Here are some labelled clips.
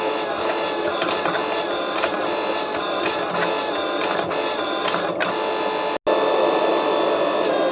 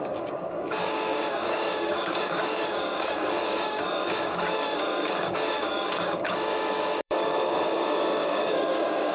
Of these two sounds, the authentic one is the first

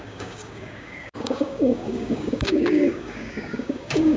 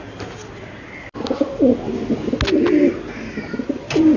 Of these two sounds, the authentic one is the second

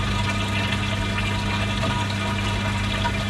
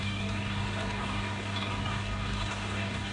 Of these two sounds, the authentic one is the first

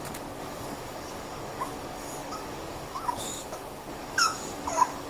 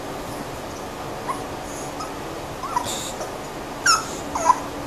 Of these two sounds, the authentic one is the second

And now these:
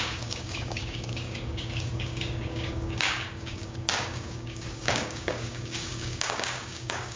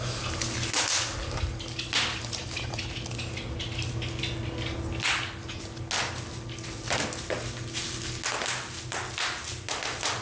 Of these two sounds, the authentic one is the second